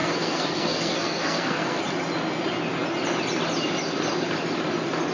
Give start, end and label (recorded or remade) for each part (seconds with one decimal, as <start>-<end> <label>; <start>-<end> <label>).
0.0-1.8 remade; 1.8-5.1 recorded

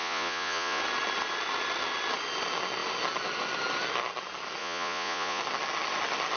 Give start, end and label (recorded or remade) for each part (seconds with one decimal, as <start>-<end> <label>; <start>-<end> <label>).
0.0-0.8 remade; 0.8-4.6 recorded; 4.6-5.4 remade; 5.4-6.4 recorded

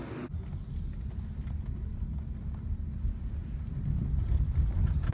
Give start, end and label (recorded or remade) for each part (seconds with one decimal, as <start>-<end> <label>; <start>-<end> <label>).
0.0-5.1 recorded

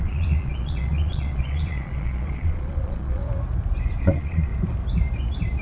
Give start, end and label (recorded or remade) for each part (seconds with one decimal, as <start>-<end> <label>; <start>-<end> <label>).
0.0-3.2 remade; 3.2-4.0 recorded; 4.0-4.5 remade; 4.5-5.6 recorded

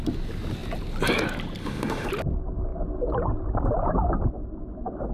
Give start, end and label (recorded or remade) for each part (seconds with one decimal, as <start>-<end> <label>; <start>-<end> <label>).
0.0-1.6 recorded; 1.6-2.1 remade; 2.1-5.1 recorded

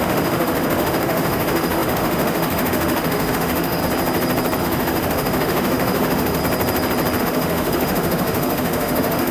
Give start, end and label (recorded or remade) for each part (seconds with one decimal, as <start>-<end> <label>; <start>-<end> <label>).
0.0-3.8 remade; 3.8-4.6 recorded; 4.6-6.4 remade; 6.4-7.2 recorded; 7.2-9.3 remade

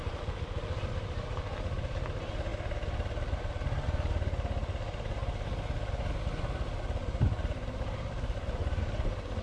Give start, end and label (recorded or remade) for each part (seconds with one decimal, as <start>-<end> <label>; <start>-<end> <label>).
0.0-7.4 recorded; 7.4-8.8 remade; 8.8-9.4 recorded